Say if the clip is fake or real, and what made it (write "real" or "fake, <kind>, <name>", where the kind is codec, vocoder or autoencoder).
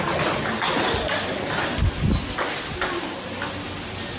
real